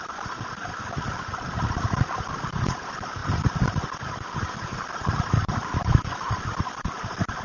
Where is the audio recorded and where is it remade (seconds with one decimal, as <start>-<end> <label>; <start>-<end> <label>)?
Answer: 0.0-7.4 recorded